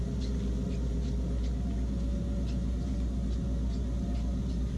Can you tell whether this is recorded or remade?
recorded